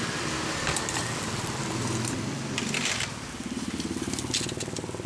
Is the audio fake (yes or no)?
no